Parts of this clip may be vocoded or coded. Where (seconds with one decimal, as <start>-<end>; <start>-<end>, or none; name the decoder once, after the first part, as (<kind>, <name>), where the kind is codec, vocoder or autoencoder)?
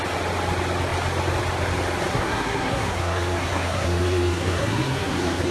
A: 2.1-5.5 (codec, SNAC)